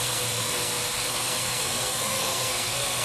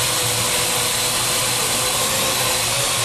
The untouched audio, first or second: second